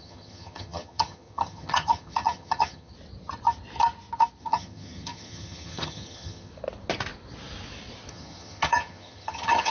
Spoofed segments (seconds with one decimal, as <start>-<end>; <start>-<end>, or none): 0.0-2.9; 4.4-6.5; 8.1-9.7